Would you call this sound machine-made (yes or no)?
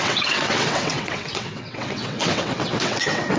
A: yes